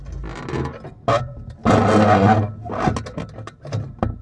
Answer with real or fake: real